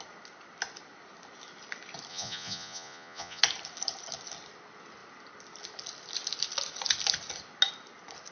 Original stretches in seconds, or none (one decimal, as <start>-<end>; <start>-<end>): 0.0-2.1; 3.4-8.3